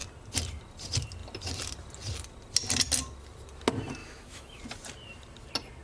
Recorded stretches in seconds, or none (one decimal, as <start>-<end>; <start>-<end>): 0.0-4.0; 4.6-5.8